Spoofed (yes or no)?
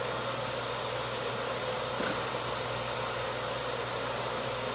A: no